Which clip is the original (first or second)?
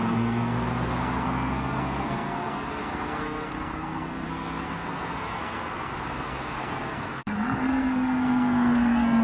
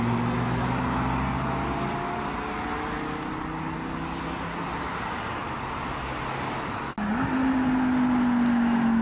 second